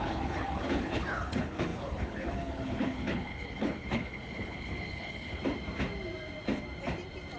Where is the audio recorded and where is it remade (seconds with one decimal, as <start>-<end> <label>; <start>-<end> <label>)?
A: 0.0-5.4 remade; 5.4-7.4 recorded